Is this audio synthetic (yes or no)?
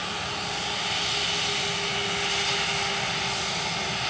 no